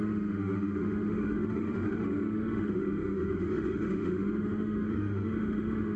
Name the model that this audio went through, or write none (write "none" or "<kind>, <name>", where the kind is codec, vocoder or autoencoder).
autoencoder, DAC-VAE